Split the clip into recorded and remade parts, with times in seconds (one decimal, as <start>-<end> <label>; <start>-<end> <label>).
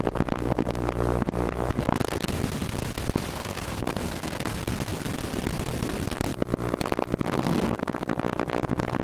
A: 0.0-1.9 remade; 1.9-3.3 recorded; 3.3-4.5 remade; 4.5-7.2 recorded; 7.2-9.0 remade